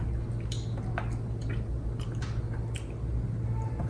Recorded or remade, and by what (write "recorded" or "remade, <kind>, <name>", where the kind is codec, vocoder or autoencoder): recorded